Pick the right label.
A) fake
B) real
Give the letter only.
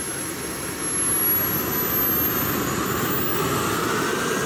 B